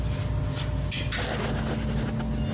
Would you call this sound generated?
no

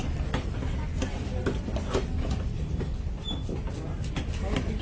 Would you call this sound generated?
no